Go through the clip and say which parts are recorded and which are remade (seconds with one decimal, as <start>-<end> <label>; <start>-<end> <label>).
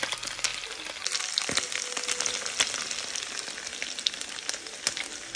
0.0-5.4 recorded